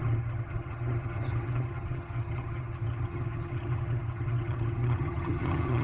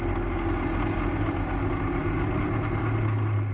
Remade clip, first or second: first